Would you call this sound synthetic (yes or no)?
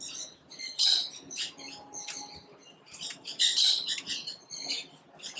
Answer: no